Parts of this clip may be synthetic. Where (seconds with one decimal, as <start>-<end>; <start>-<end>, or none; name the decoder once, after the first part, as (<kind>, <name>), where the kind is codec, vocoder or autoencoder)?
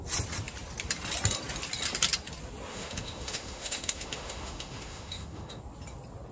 2.7-5.6 (autoencoder, DAC-VAE)